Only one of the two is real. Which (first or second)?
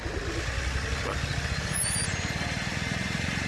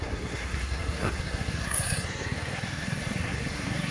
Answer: first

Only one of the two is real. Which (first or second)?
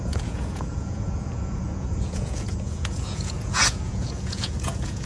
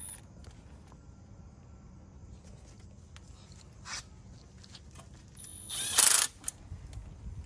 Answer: second